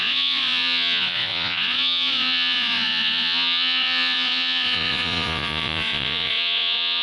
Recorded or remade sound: remade